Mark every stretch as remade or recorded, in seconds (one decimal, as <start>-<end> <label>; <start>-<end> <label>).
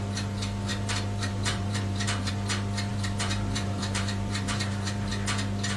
0.0-0.7 recorded; 0.7-2.3 remade; 2.3-2.9 recorded; 2.9-5.1 remade; 5.1-5.8 recorded